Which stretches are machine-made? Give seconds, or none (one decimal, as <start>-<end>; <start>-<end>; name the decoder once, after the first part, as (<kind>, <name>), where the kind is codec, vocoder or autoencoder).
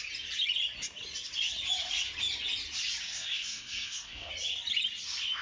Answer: 3.0-4.3 (codec, SNAC)